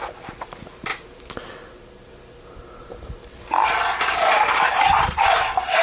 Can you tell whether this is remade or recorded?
recorded